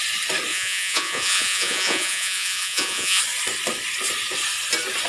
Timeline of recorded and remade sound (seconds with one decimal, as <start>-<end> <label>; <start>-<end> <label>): 0.0-0.5 recorded; 0.5-3.2 remade; 3.2-5.1 recorded